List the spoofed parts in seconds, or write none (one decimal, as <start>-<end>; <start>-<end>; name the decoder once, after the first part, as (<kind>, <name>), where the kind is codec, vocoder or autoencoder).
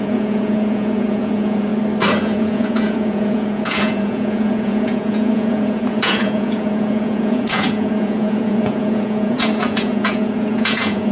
0.0-1.7 (vocoder, Vocos); 2.2-11.1